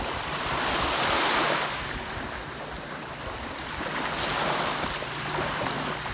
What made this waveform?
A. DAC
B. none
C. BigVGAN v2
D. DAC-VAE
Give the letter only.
B